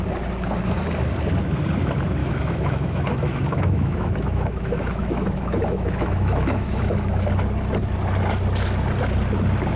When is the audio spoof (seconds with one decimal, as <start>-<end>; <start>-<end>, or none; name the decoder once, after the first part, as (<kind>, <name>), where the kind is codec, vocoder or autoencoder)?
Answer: 2.2-7.3 (autoencoder, DAC-VAE)